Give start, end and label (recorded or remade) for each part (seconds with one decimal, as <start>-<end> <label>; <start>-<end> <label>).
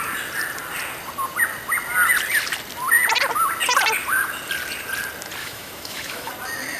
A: 0.0-5.4 recorded; 5.4-6.3 remade; 6.3-6.8 recorded